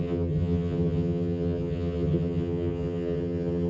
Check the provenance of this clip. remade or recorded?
remade